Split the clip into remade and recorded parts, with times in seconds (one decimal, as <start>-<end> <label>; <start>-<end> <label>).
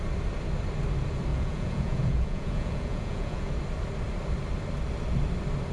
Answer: 0.0-1.3 recorded; 1.3-3.5 remade; 3.5-5.7 recorded